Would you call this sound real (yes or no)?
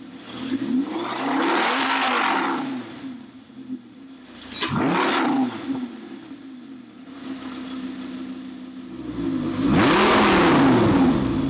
yes